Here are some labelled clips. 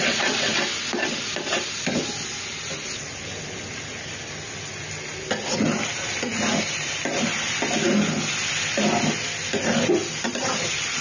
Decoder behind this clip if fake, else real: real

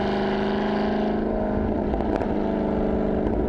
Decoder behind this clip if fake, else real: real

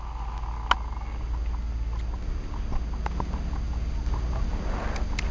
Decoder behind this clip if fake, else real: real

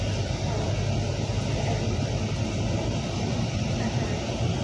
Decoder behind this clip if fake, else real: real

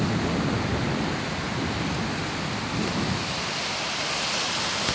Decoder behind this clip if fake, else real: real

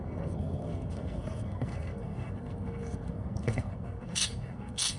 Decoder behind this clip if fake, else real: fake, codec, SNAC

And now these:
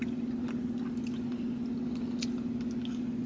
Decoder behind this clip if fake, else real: real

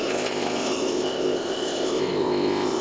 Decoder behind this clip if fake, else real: fake, codec, ZipCodec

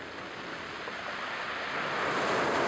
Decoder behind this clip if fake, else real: real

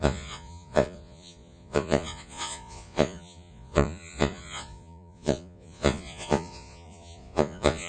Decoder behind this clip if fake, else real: fake, vocoder, Vocos